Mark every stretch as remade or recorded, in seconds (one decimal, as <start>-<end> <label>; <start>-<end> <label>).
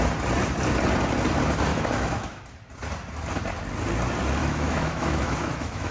0.0-1.7 recorded; 1.7-2.4 remade; 2.4-4.4 recorded; 4.4-5.9 remade